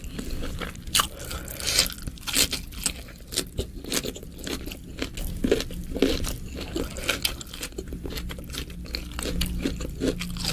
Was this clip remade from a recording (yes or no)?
no